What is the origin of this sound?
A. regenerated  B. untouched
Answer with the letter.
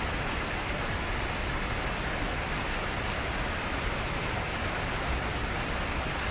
B